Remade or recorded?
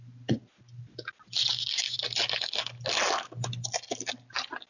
recorded